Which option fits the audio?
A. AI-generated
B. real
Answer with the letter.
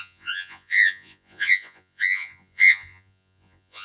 A